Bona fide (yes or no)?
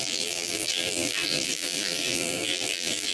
no